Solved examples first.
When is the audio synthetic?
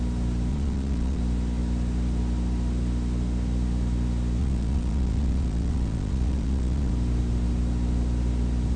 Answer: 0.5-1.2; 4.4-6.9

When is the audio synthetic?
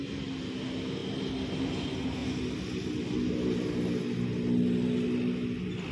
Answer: none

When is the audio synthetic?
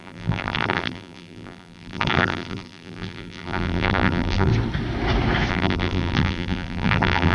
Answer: 0.0-4.5; 5.5-7.3